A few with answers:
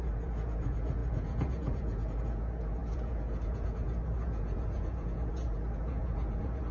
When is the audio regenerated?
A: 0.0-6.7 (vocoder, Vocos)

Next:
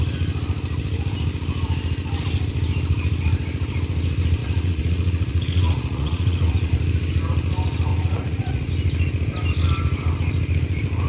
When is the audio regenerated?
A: 4.4-6.7 (vocoder, Vocos); 7.9-8.7

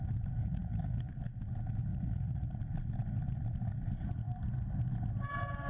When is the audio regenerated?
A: 0.4-1.1 (vocoder, Vocos); 1.9-2.5

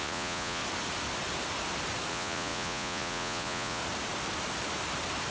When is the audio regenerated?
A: 0.0-0.6 (vocoder, Vocos); 2.1-3.8

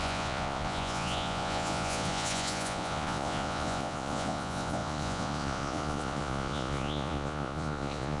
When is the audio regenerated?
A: 0.0-8.2 (vocoder, Vocos)

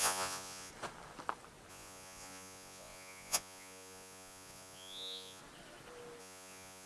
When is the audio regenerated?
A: 0.0-0.7 (vocoder, Vocos); 1.7-5.4; 6.2-6.9

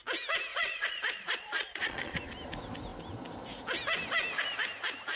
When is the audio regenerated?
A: 0.5-2.2 (vocoder, Vocos)